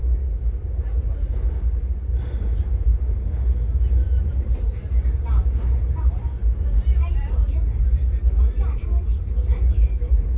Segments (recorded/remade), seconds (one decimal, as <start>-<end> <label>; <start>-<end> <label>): 0.0-2.9 remade; 2.9-3.8 recorded; 3.8-10.4 remade